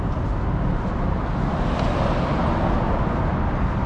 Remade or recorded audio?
recorded